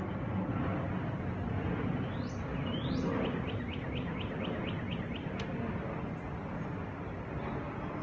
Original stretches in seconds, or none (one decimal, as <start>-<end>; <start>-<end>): 0.0-8.0